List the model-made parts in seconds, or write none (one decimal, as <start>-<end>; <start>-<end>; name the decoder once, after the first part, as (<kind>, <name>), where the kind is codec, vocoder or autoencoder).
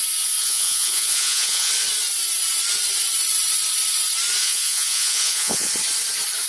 0.4-1.7 (vocoder, Vocos); 4.4-5.7